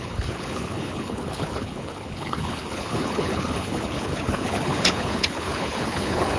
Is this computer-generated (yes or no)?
yes